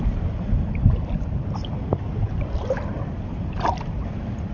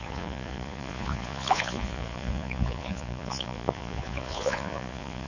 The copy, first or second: second